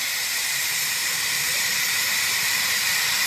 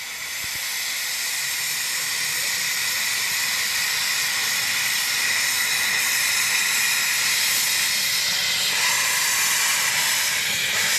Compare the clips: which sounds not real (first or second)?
first